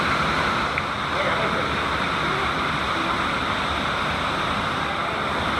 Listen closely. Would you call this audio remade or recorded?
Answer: recorded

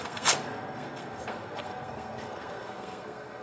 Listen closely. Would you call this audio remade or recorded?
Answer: remade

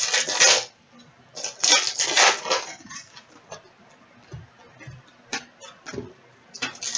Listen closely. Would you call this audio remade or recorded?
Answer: recorded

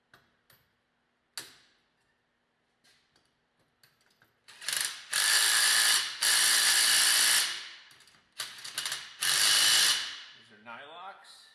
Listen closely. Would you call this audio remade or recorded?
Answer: recorded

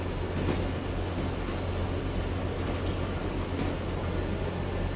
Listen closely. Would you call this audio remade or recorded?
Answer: recorded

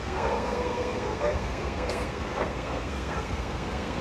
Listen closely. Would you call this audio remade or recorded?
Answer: remade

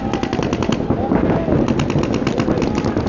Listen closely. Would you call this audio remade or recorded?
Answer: recorded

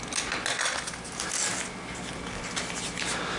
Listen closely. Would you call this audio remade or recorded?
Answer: recorded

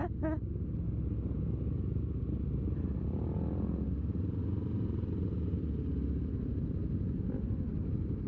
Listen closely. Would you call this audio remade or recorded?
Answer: recorded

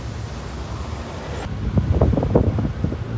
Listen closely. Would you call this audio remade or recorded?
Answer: recorded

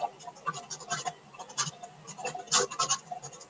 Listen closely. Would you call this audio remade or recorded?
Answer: recorded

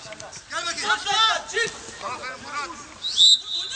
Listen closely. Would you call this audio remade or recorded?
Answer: recorded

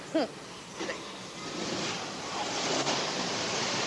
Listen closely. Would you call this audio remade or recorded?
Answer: recorded